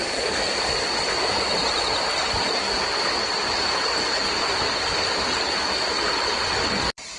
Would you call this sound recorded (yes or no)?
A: yes